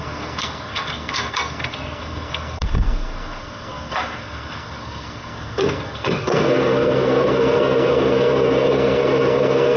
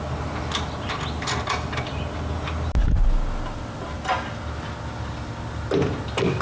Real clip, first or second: second